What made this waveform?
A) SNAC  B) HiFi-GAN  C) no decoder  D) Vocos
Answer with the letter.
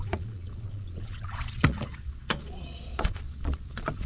D